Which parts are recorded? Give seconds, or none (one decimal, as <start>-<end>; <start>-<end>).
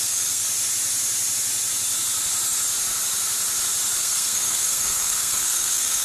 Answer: 0.4-4.0